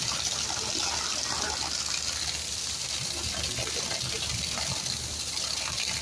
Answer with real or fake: real